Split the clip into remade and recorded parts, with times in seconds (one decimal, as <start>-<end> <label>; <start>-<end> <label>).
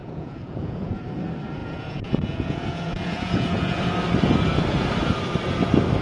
0.0-0.9 remade; 0.9-1.6 recorded; 1.6-3.9 remade; 3.9-6.0 recorded